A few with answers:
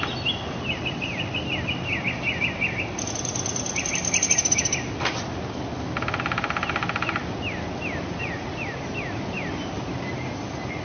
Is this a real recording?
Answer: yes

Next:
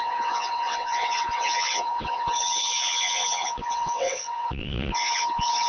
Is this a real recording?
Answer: no